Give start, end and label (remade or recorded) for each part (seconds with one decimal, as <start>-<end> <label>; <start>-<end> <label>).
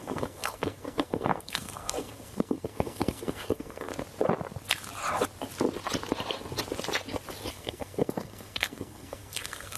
0.0-3.9 remade; 3.9-7.5 recorded; 7.5-9.8 remade